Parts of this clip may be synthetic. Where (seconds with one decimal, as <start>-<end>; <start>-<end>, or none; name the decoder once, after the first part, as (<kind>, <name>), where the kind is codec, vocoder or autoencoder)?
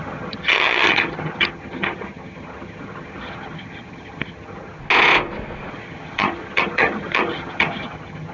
0.0-4.8 (vocoder, HiFi-GAN); 5.7-8.3